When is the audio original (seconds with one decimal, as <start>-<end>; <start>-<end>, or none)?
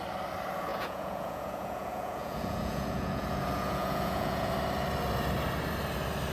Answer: 0.0-0.7; 4.5-6.3